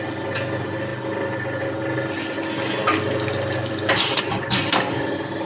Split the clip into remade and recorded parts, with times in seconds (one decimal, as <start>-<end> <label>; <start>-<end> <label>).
0.0-0.9 remade; 0.9-4.2 recorded; 4.2-5.5 remade